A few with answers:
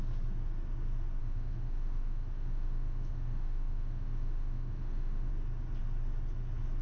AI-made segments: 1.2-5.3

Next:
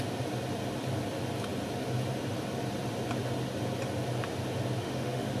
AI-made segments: 4.8-5.4

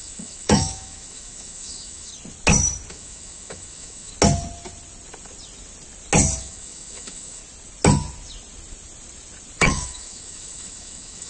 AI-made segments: 0.0-2.1; 2.9-4.1; 6.4-7.4; 9.6-11.3